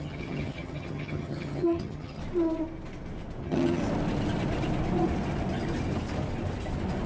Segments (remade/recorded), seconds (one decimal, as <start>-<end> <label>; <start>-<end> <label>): 0.0-2.2 remade; 2.2-3.4 recorded; 3.4-3.8 remade; 3.8-7.1 recorded